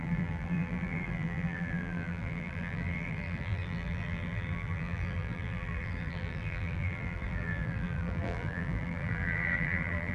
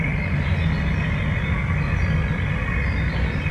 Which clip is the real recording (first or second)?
second